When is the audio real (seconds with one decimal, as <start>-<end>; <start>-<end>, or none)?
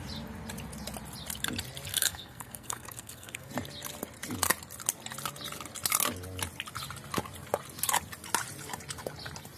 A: 0.0-1.9; 3.5-9.6